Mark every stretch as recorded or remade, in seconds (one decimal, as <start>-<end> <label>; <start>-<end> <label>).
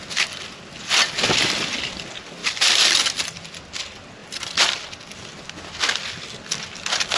0.0-2.4 recorded; 2.4-3.2 remade; 3.2-4.2 recorded; 4.2-5.6 remade; 5.6-7.2 recorded